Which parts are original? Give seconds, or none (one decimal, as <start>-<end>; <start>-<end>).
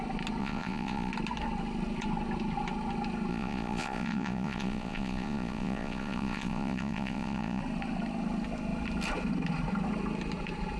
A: 0.0-0.4; 1.1-3.3; 7.6-10.8